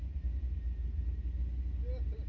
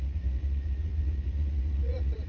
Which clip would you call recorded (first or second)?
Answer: first